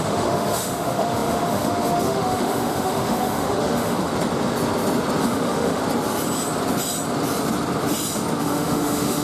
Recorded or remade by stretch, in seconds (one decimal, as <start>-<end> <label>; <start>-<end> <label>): 0.0-4.1 remade; 4.1-5.2 recorded; 5.2-5.8 remade; 5.8-8.4 recorded; 8.4-9.2 remade